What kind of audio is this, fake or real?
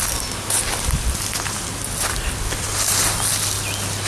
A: real